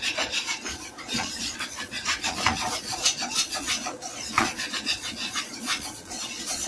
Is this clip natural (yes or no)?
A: no